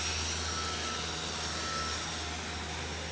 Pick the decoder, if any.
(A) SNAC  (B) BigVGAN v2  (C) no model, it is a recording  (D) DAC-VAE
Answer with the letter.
C